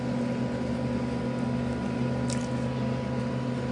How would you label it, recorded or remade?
recorded